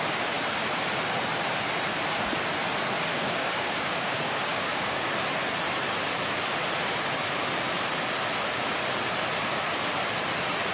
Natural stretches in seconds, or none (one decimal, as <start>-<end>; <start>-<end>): 0.0-3.1; 5.1-10.7